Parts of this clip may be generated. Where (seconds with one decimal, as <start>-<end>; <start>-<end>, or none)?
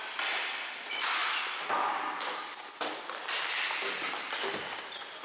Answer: none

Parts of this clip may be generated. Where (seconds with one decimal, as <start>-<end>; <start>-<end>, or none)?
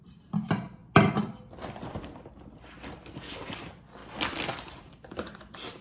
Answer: 0.0-0.8; 3.3-4.0; 4.8-5.8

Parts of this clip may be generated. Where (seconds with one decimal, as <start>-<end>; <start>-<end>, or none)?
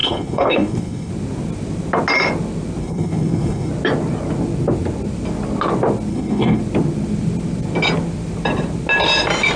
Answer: 0.0-1.1; 2.8-3.7; 6.1-6.6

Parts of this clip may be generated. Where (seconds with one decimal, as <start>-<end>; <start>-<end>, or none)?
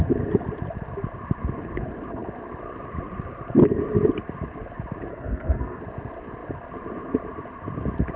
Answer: 5.1-5.8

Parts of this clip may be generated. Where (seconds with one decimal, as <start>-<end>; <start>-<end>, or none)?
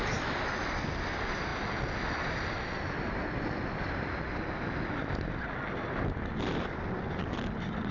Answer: none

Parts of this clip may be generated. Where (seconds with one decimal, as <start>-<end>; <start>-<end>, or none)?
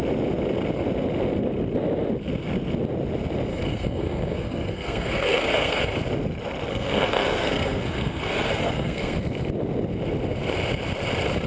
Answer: 3.5-5.8; 6.7-9.2